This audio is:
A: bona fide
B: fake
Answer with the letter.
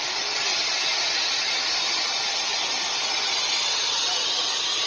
A